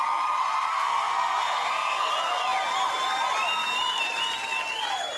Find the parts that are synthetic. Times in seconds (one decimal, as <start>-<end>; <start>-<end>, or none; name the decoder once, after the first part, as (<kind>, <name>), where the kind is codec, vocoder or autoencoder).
0.7-2.1 (codec, SNAC)